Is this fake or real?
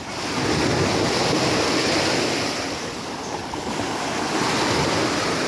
real